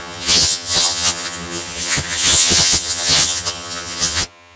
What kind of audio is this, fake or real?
fake